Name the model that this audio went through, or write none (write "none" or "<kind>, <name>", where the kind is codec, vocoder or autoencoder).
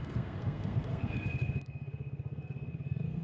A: codec, SNAC